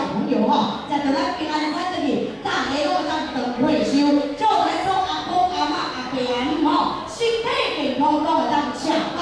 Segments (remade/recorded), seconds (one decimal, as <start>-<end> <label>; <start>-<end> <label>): 0.0-1.6 recorded; 1.6-4.7 remade; 4.7-5.4 recorded; 5.4-6.8 remade; 6.8-9.2 recorded